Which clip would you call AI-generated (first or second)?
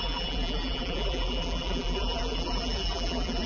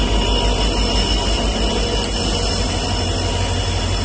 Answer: first